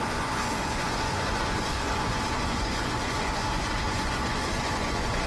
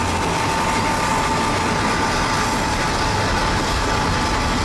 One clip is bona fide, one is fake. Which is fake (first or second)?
first